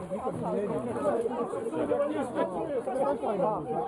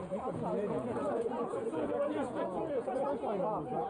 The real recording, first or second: first